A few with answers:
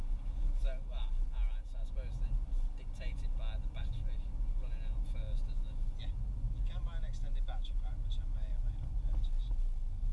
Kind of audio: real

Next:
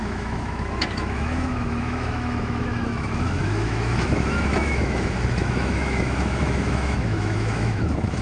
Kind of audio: fake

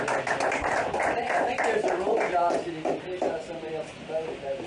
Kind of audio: real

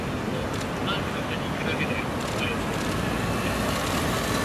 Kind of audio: real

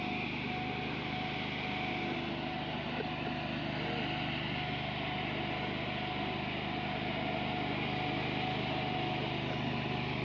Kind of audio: real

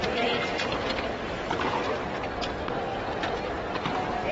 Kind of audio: real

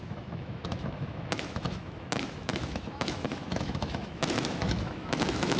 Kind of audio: fake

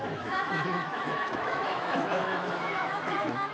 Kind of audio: fake